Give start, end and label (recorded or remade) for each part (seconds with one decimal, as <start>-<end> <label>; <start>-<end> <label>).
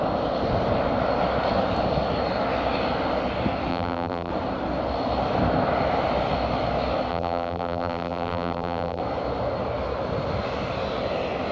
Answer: 0.0-3.7 recorded; 3.7-4.3 remade; 4.3-7.1 recorded; 7.1-9.0 remade; 9.0-11.5 recorded